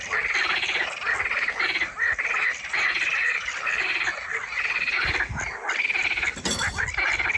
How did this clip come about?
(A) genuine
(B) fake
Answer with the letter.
A